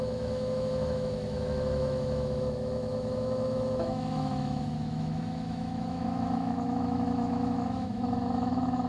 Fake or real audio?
fake